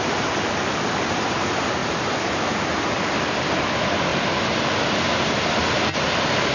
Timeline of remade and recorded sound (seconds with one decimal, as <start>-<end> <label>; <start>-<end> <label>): 0.0-6.5 recorded